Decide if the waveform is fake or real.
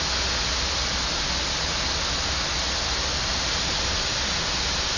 real